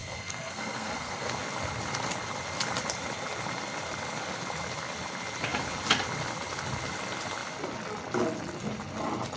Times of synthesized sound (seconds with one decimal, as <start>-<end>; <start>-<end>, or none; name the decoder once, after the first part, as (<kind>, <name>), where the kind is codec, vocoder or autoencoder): 0.0-1.3 (codec, SNAC)